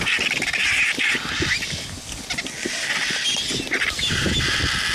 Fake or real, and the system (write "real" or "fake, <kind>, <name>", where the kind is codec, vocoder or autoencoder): real